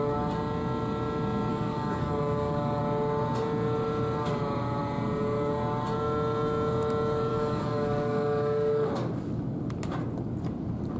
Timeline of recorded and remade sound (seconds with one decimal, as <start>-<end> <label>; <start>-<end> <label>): 0.0-1.5 recorded; 1.5-2.8 remade; 2.8-7.3 recorded; 7.3-8.9 remade; 8.9-11.0 recorded